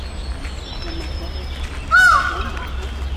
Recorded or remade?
recorded